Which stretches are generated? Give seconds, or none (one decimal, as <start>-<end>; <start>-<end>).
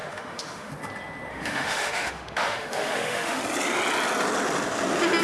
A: 0.0-0.7; 1.3-3.4